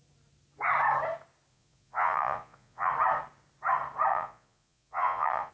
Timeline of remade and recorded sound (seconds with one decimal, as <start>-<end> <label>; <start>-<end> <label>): 0.0-1.5 recorded; 1.5-2.9 remade; 2.9-4.1 recorded; 4.1-5.5 remade

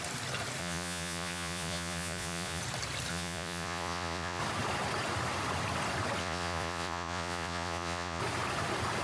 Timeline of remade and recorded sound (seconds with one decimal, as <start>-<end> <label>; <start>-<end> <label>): 0.0-0.6 recorded; 0.6-2.6 remade; 2.6-3.1 recorded; 3.1-4.4 remade; 4.4-6.2 recorded; 6.2-8.2 remade; 8.2-9.0 recorded

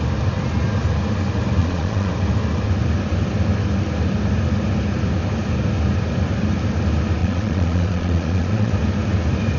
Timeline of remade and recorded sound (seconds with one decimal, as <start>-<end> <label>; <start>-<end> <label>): 0.0-1.6 recorded; 1.6-2.1 remade; 2.1-7.2 recorded; 7.2-8.7 remade; 8.7-9.6 recorded